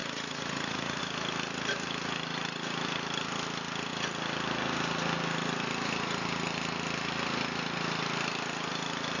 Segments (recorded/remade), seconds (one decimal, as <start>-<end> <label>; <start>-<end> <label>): 0.0-1.0 remade; 1.0-9.2 recorded